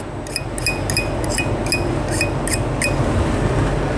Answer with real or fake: real